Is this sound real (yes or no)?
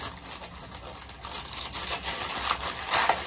yes